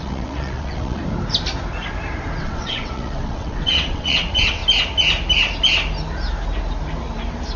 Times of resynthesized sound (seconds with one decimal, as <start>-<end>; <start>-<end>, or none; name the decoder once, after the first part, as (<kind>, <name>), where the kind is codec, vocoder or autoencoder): 0.0-1.0 (vocoder, WaveNeXt); 2.4-4.6